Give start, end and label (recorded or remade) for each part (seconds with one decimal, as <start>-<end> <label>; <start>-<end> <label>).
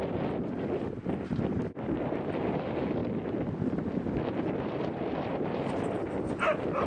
0.0-3.0 recorded; 3.0-6.3 remade; 6.3-6.9 recorded